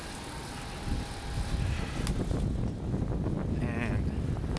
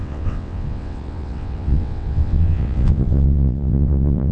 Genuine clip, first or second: first